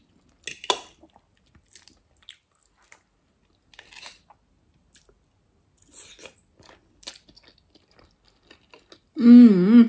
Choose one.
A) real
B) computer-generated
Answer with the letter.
A